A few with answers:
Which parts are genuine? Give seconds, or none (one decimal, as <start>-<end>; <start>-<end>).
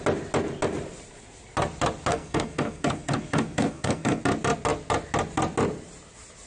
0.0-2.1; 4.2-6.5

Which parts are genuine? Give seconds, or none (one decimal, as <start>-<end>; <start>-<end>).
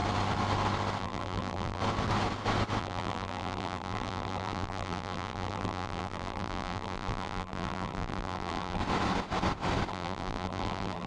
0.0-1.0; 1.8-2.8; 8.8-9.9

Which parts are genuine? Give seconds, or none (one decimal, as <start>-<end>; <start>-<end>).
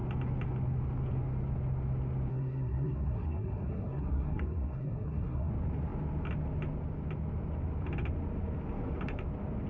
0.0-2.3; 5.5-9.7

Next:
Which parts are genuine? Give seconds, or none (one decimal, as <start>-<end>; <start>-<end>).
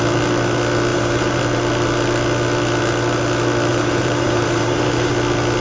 0.0-0.9; 1.4-3.7; 5.1-5.6